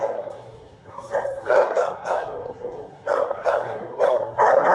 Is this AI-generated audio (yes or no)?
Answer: yes